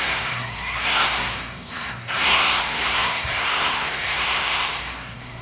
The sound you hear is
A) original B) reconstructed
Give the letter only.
B